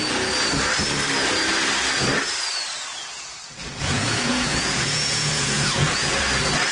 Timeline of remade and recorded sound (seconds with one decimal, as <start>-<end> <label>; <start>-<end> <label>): 0.0-3.6 recorded; 3.6-6.2 remade; 6.2-6.7 recorded